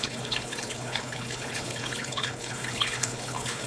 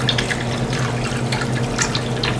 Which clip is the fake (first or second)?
first